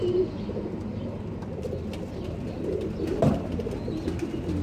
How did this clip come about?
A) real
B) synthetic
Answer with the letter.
A